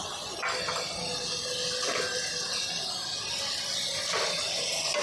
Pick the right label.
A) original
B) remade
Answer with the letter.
A